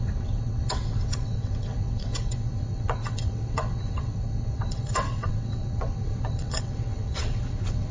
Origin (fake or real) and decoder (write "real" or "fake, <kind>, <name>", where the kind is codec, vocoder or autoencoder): fake, vocoder, WaveNeXt